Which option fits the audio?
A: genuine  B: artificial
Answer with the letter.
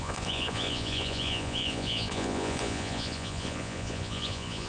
B